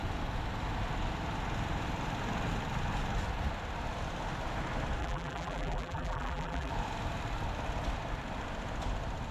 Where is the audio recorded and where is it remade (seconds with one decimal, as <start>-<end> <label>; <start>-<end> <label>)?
0.0-5.0 recorded; 5.0-6.7 remade; 6.7-9.3 recorded